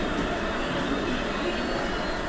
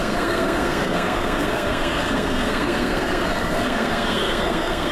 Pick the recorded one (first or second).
first